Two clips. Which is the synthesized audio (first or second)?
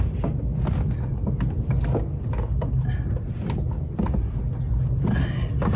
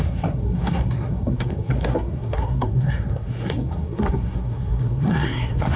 second